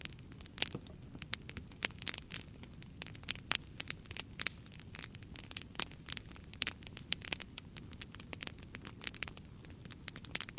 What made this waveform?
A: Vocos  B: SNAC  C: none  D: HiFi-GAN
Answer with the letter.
C